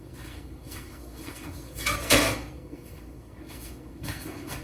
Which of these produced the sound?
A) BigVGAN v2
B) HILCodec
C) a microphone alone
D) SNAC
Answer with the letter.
D